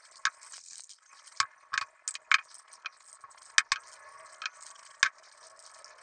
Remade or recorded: recorded